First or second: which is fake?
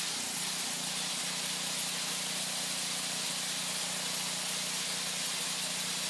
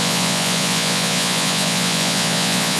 second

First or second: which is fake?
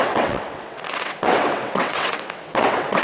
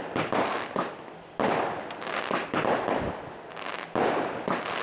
first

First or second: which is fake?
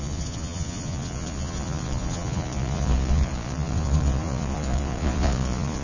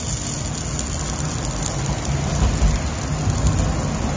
first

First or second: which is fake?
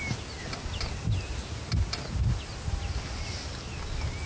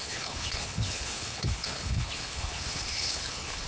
second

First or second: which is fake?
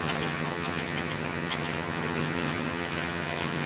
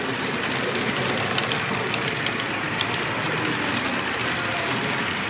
first